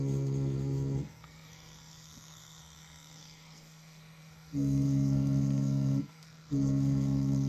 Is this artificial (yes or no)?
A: yes